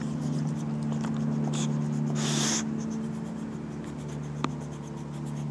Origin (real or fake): real